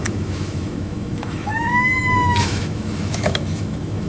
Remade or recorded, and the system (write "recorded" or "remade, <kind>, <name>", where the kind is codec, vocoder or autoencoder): remade, autoencoder, DAC-VAE